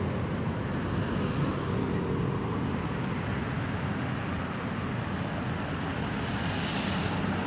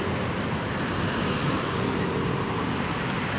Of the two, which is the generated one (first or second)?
second